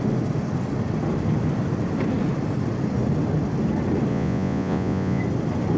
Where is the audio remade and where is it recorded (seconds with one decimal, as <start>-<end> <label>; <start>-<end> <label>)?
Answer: 0.0-4.1 recorded; 4.1-5.2 remade; 5.2-5.8 recorded